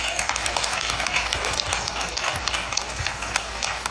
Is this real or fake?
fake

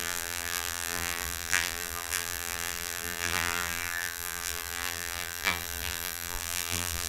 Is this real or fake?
fake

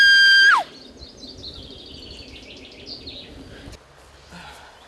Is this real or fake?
real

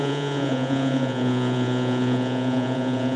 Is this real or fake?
fake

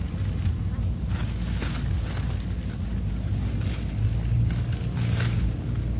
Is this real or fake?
real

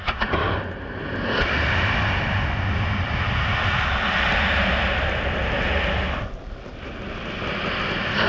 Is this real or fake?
real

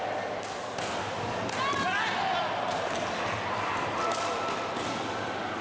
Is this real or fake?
real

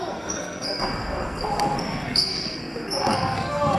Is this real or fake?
fake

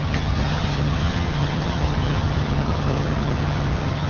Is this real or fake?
fake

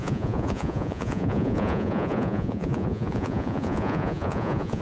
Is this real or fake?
fake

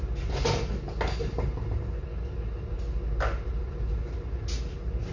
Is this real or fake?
real